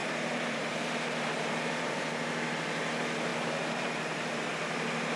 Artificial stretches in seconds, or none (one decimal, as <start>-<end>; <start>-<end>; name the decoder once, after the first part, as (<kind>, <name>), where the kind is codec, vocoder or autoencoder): 0.0-2.1 (vocoder, BigVGAN v2); 3.3-4.4